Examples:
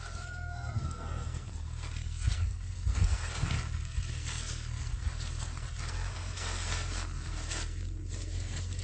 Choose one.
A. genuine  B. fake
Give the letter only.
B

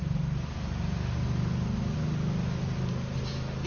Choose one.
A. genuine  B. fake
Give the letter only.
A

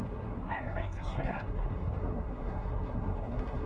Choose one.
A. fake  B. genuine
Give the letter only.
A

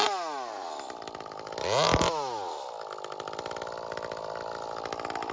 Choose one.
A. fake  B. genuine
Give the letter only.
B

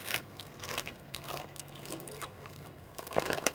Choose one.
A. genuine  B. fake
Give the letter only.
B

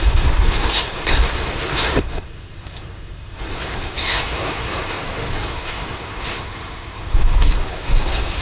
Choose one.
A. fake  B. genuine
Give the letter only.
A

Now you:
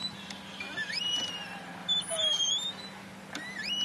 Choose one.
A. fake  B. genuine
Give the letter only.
B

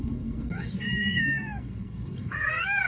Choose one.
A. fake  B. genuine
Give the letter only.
A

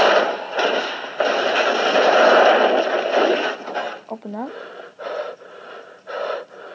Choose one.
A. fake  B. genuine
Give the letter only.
B